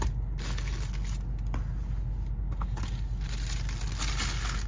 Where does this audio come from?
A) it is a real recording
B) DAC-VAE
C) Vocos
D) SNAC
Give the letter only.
A